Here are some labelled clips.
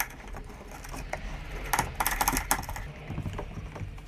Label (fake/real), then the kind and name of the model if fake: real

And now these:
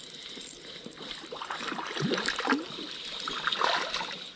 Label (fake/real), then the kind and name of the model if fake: real